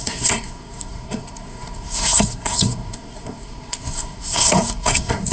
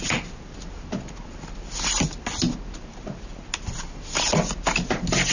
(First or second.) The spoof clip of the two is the first